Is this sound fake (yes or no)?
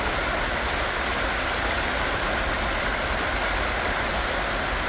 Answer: no